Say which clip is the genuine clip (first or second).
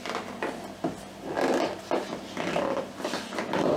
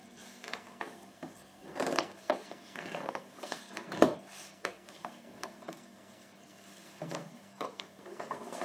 first